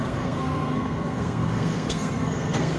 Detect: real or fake fake